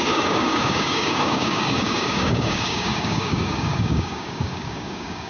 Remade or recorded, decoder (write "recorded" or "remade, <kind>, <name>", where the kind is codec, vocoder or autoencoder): remade, codec, DAC